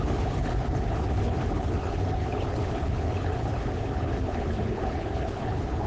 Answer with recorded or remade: remade